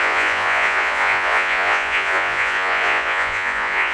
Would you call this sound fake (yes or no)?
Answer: yes